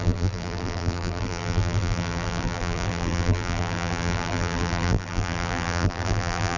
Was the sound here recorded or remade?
remade